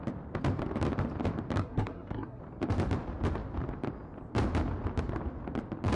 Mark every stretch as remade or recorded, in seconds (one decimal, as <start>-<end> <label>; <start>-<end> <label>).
0.0-1.6 recorded; 1.6-2.4 remade; 2.4-6.0 recorded